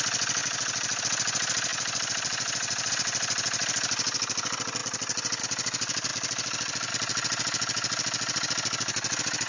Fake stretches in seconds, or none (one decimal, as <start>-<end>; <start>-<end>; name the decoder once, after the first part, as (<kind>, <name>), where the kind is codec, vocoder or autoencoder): 0.4-1.0 (vocoder, BigVGAN v2); 1.7-2.9; 6.1-6.9